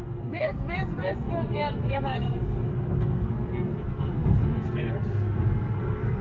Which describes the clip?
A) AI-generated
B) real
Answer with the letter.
A